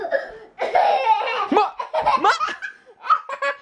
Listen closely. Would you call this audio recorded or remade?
recorded